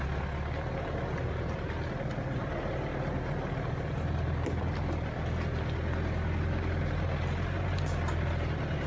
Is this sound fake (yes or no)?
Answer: no